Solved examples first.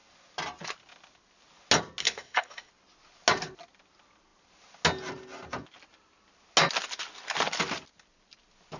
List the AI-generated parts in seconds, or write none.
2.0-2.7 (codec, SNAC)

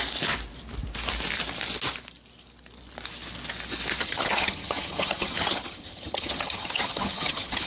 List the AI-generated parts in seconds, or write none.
4.0-7.7 (vocoder, HiFi-GAN)

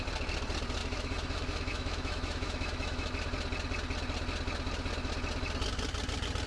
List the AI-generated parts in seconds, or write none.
0.8-3.1 (autoencoder, DAC-VAE)

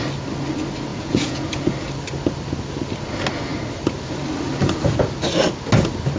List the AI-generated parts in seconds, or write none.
0.9-1.6 (vocoder, Vocos)

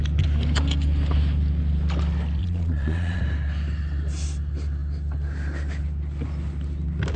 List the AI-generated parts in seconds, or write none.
2.4-3.2 (vocoder, Vocos)

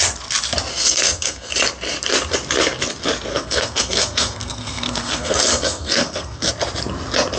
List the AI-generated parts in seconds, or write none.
0.7-1.5 (codec, SNAC); 3.3-6.5

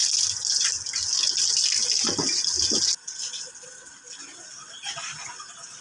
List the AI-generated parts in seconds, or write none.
none